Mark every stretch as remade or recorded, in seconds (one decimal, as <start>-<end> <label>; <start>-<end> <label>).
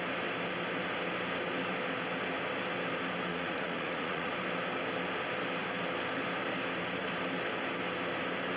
0.0-3.3 recorded; 3.3-4.3 remade; 4.3-8.6 recorded